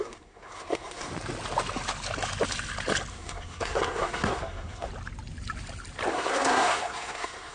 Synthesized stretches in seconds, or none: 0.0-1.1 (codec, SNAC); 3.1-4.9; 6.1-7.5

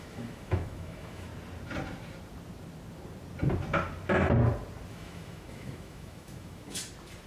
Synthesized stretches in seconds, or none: 0.0-1.3 (autoencoder, DAC-VAE); 4.9-6.8

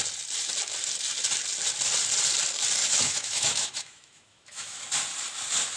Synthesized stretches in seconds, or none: 2.8-4.8 (autoencoder, DAC-VAE)

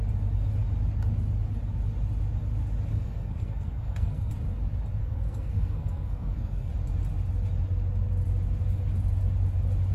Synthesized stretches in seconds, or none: 2.9-4.3 (codec, SNAC); 5.0-6.7

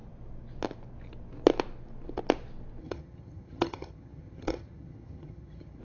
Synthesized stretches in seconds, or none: 2.8-5.8 (vocoder, HiFi-GAN)

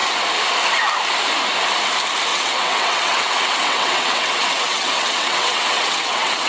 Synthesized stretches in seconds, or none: 2.3-6.5 (vocoder, WaveNeXt)

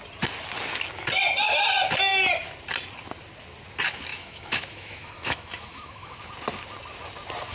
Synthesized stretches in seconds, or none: 4.1-6.2 (autoencoder, DAC-VAE)